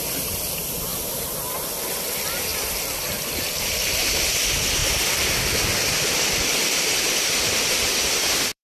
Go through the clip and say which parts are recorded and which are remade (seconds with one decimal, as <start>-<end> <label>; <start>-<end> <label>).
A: 0.0-0.9 remade; 0.9-1.4 recorded; 1.4-8.6 remade